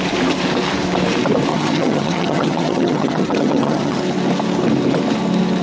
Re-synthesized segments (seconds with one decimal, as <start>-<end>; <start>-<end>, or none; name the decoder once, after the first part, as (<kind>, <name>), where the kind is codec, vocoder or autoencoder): 1.5-4.0 (vocoder, HiFi-GAN)